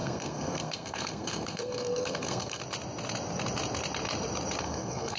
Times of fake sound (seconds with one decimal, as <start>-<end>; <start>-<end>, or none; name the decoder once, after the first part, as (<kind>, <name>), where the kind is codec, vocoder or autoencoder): 0.0-2.6 (codec, SNAC); 4.6-5.2